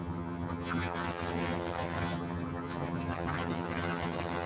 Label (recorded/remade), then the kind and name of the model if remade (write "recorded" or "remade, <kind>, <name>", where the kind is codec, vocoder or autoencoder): remade, vocoder, HiFi-GAN